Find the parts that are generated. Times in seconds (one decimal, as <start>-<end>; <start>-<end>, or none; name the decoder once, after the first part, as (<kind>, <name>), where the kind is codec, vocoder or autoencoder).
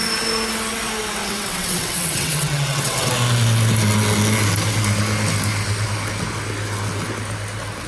1.2-3.1 (vocoder, WaveNeXt)